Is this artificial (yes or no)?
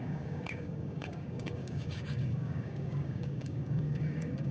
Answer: yes